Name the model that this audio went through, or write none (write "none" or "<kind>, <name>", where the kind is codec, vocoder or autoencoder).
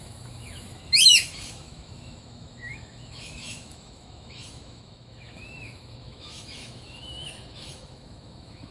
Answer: autoencoder, DAC-VAE